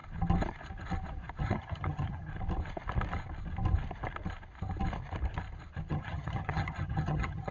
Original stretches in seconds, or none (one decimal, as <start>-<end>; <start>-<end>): 0.0-1.4; 2.3-5.9